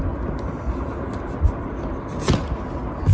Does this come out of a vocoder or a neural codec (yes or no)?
no